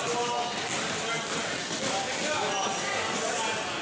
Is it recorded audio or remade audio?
recorded